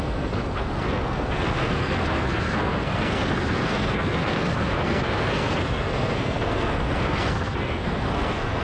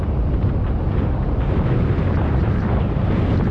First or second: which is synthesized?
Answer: first